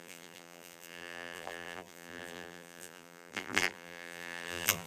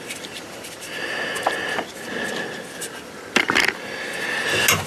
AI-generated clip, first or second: first